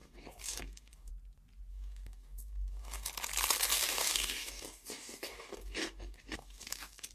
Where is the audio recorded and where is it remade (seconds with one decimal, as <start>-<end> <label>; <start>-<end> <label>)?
0.0-1.1 remade; 1.1-1.7 recorded; 1.7-3.1 remade; 3.1-3.7 recorded; 3.7-7.1 remade